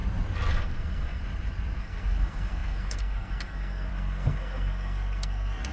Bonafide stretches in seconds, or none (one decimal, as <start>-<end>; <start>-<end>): 0.0-0.5; 1.2-1.8